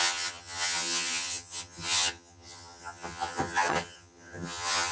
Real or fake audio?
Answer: fake